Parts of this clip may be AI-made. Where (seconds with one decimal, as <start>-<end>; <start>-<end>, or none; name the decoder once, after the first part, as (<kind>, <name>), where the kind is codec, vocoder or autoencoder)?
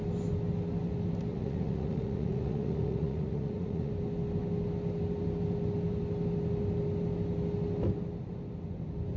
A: 1.3-3.9 (vocoder, Vocos)